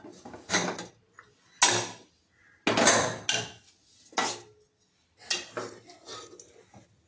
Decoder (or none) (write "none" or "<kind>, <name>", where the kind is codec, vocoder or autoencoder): none